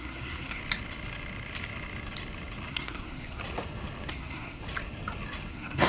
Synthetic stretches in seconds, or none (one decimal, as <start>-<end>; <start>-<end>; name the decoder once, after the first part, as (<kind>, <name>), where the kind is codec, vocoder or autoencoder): 0.0-0.6 (codec, SNAC); 2.7-3.4; 4.1-4.6; 5.5-5.9